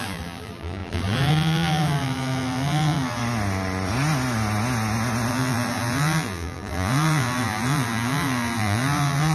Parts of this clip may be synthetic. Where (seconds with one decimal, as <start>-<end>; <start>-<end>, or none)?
0.0-3.2; 5.3-9.3